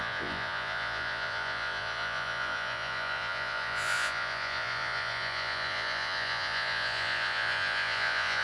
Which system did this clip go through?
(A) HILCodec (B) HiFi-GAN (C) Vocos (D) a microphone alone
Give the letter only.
C